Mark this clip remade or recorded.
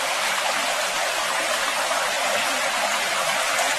remade